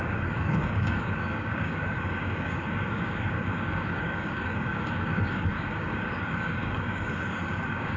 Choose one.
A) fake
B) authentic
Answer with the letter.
A